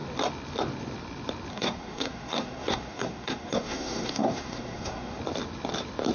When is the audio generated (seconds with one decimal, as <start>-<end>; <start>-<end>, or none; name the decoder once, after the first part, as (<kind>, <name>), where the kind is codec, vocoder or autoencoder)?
1.5-5.2 (codec, SNAC)